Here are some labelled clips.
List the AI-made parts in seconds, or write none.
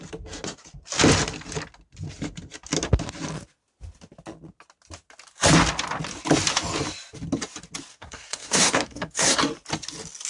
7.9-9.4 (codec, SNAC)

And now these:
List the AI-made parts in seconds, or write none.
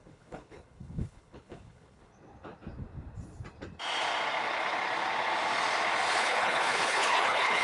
0.0-2.1 (codec, HILCodec); 6.1-7.6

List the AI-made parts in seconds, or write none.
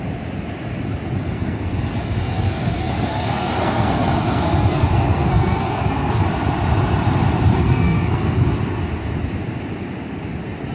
1.2-6.2 (codec, SNAC); 7.5-8.4